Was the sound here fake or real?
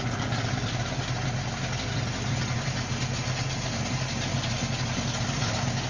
real